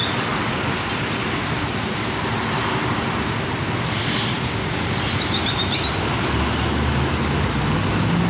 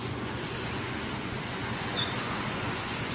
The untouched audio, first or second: first